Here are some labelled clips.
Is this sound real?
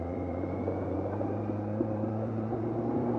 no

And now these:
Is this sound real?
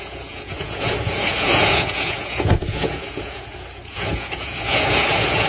no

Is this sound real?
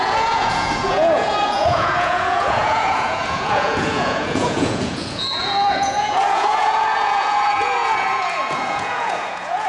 no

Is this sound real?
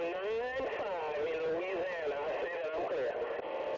yes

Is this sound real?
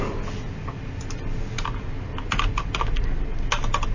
yes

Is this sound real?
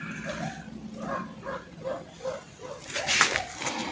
yes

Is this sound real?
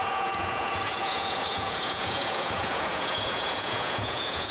no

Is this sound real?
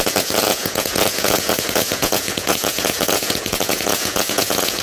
no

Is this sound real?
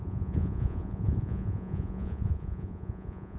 no